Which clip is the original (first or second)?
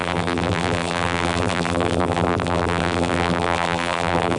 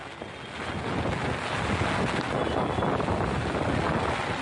second